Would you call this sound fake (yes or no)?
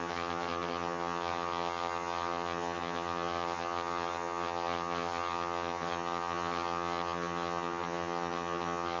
yes